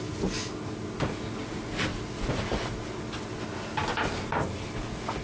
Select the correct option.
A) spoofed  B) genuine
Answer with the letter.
B